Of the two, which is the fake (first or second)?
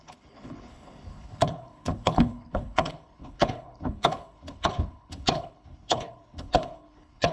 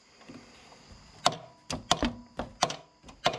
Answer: first